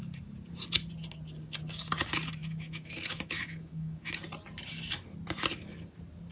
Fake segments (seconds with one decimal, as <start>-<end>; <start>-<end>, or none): 2.4-4.1